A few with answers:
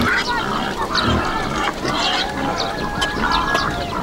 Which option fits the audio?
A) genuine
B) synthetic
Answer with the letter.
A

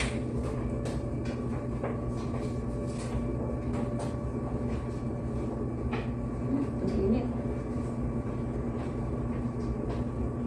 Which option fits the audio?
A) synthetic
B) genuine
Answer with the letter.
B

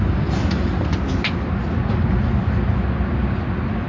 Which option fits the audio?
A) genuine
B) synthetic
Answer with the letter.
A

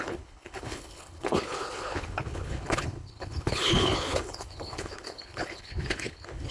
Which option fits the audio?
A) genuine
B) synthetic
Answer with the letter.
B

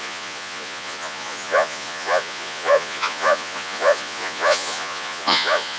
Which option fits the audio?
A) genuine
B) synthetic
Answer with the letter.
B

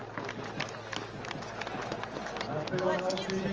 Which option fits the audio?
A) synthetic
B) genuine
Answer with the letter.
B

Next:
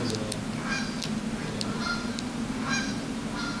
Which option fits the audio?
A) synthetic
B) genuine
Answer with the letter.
B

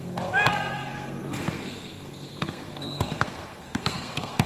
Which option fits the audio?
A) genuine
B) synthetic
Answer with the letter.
B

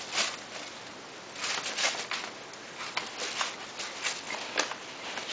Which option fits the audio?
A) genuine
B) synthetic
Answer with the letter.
A